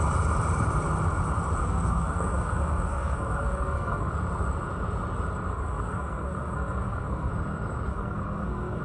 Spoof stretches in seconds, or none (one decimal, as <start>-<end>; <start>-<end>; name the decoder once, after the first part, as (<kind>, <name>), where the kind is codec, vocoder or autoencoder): 1.6-4.1 (codec, SNAC); 5.5-7.3; 7.9-8.8